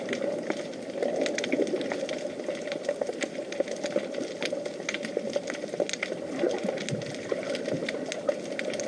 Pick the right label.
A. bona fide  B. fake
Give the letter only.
A